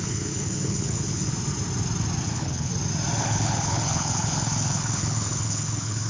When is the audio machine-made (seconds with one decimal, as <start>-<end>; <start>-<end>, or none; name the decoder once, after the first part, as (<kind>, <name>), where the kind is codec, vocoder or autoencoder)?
0.0-1.3 (codec, HILCodec); 2.2-2.7; 3.2-6.1